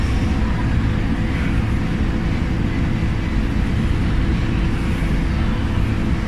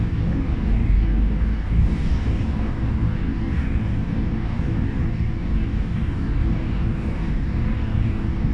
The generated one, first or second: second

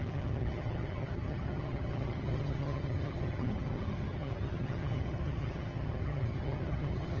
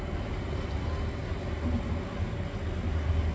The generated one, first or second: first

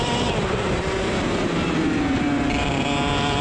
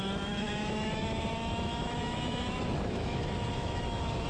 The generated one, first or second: second